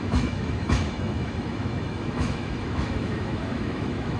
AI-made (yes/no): yes